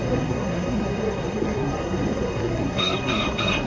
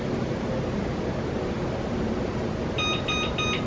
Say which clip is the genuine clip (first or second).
second